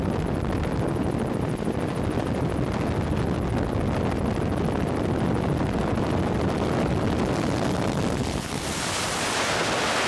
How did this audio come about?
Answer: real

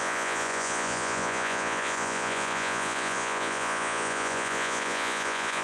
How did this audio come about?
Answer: fake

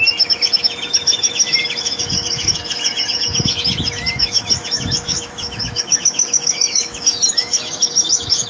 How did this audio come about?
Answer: fake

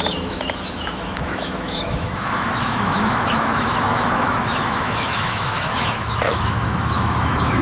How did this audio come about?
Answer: fake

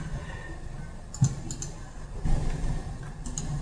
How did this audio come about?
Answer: real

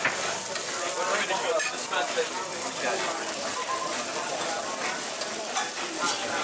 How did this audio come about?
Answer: real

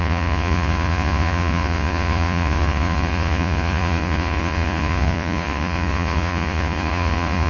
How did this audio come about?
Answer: fake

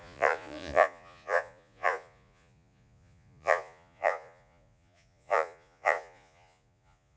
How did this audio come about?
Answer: fake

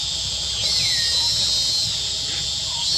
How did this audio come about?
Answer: real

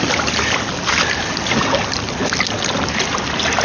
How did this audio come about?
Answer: real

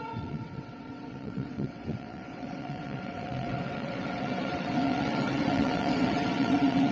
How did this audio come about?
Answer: fake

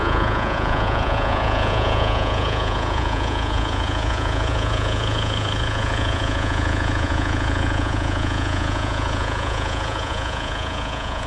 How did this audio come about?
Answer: fake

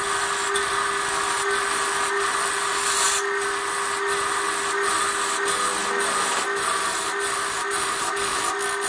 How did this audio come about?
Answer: real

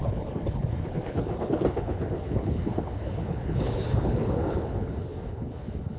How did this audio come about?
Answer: fake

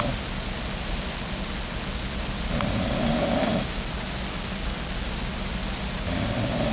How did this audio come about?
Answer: real